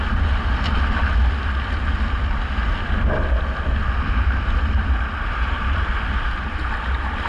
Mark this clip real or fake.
real